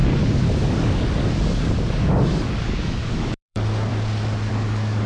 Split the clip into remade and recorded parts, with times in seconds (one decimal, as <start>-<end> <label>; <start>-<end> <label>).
0.0-3.9 remade; 3.9-4.5 recorded; 4.5-5.1 remade